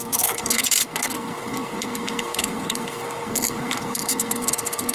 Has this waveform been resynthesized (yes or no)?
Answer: yes